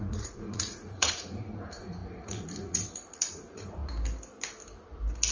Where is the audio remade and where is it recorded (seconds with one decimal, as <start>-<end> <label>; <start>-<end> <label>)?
0.0-3.8 remade; 3.8-5.3 recorded